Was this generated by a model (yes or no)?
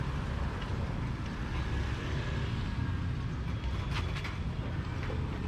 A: no